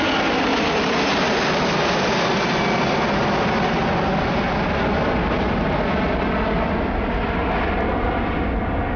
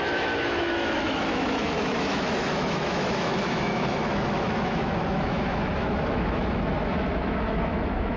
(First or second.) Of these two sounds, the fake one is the second